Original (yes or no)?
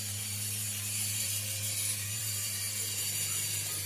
no